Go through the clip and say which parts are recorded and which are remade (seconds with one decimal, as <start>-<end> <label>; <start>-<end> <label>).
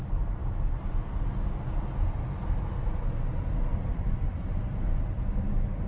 0.0-5.9 recorded